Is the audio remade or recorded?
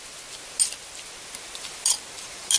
recorded